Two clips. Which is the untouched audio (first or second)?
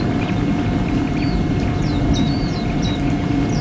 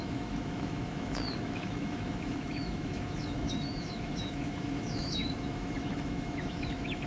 first